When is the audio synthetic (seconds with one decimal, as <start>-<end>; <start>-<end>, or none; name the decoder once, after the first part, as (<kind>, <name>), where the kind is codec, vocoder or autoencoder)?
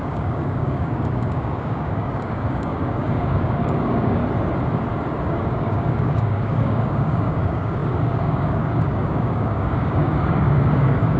0.0-4.2 (codec, DAC); 5.3-11.2